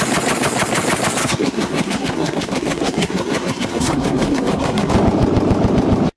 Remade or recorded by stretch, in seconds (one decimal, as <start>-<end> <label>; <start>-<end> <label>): 0.0-1.2 recorded; 1.2-4.9 remade; 4.9-6.2 recorded